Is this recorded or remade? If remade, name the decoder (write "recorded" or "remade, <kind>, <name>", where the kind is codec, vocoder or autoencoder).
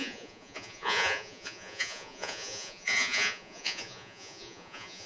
remade, vocoder, Vocos